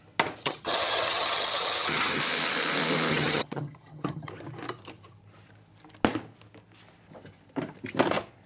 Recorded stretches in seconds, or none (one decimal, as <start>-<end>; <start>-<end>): 0.0-0.4; 2.2-3.1; 4.3-8.5